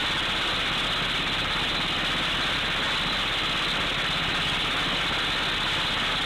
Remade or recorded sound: recorded